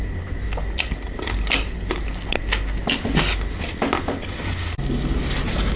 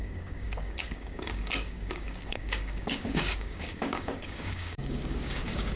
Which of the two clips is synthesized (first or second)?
second